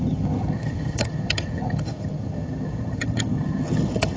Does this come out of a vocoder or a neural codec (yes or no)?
yes